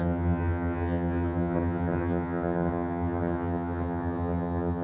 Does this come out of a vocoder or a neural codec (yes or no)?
yes